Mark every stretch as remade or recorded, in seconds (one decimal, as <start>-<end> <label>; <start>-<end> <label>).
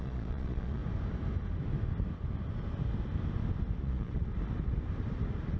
0.0-0.8 remade; 0.8-3.8 recorded; 3.8-4.3 remade; 4.3-5.6 recorded